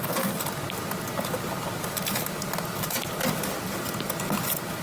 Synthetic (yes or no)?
no